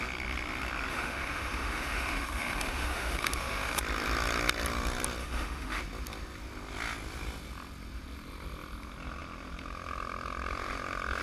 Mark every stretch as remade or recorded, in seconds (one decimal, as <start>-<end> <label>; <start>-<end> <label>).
0.0-0.9 recorded; 0.9-3.8 remade; 3.8-5.2 recorded; 5.2-5.8 remade; 5.8-11.2 recorded